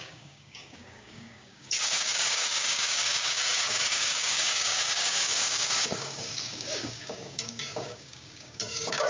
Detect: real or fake fake